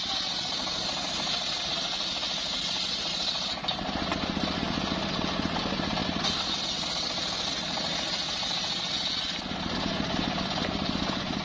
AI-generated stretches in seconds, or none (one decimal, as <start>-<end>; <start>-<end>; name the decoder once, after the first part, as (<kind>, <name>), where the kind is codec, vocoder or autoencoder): none